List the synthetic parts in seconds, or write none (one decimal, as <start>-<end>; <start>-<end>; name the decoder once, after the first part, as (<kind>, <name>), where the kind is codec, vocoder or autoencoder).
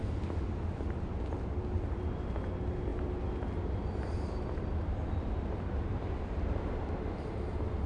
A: none